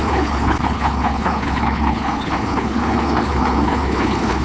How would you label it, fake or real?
fake